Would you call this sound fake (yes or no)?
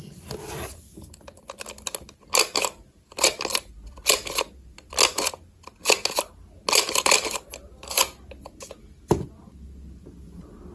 no